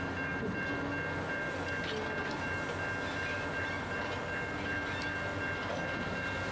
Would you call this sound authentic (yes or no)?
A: yes